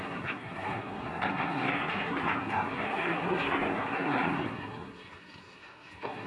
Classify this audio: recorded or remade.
remade